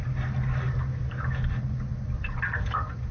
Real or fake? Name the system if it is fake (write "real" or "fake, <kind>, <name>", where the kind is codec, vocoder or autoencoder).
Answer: real